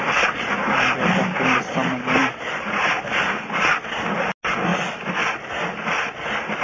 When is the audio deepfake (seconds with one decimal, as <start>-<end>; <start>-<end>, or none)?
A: none